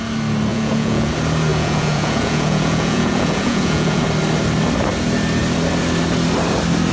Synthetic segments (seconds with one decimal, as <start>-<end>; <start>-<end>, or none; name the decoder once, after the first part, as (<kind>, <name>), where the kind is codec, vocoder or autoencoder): 0.5-1.1 (vocoder, Vocos); 1.5-4.0